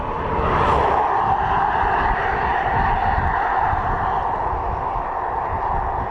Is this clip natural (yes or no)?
yes